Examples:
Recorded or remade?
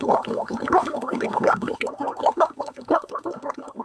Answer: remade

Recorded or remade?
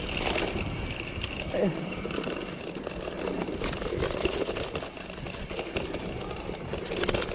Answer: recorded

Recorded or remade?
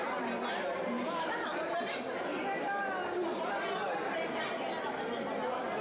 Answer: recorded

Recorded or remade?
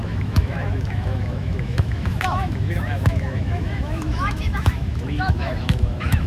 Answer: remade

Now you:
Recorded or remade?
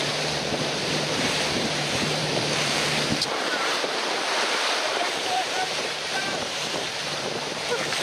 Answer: remade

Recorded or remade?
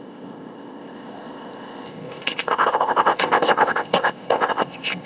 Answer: remade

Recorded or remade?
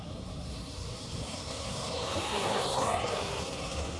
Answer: remade